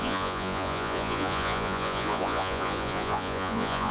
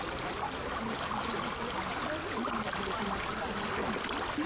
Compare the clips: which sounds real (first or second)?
second